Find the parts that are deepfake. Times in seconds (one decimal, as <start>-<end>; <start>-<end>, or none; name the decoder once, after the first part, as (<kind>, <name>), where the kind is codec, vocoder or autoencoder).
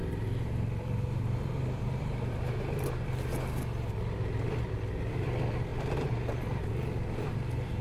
0.0-3.3 (vocoder, BigVGAN v2); 5.1-5.7; 7.2-7.8